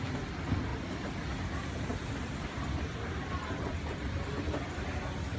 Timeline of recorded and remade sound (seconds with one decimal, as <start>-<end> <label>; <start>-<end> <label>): 0.0-0.7 recorded; 0.7-1.4 remade; 1.4-1.9 recorded; 1.9-5.4 remade